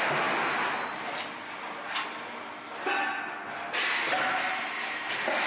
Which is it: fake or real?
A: real